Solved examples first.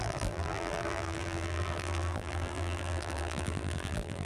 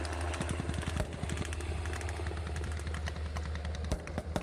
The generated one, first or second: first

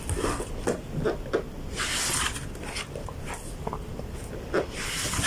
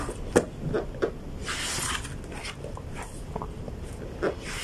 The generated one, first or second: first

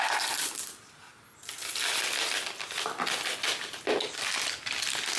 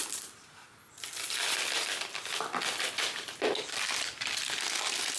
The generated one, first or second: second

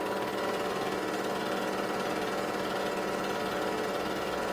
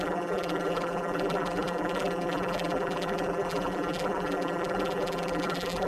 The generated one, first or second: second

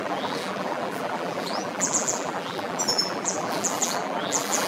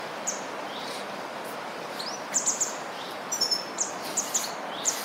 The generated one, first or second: first